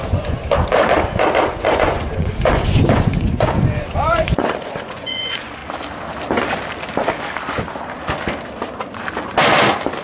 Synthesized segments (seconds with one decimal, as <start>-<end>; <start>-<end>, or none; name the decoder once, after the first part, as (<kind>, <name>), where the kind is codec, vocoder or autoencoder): 0.0-0.4 (vocoder, Vocos); 1.5-5.6